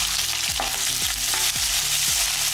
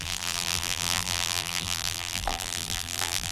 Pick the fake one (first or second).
second